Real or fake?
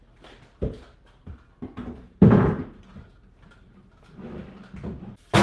real